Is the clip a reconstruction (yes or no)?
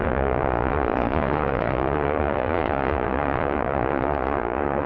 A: yes